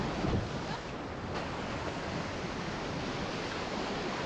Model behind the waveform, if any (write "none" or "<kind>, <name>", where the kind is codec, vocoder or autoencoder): none